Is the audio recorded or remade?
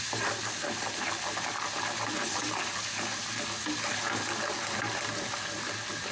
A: recorded